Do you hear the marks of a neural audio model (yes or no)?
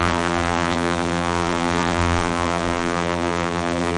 yes